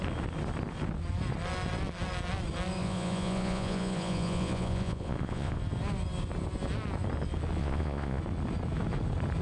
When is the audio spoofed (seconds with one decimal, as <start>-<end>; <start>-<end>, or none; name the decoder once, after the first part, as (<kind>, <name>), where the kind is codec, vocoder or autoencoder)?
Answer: 2.8-5.6 (vocoder, Vocos); 7.6-8.2